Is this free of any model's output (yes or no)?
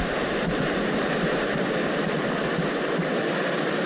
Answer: no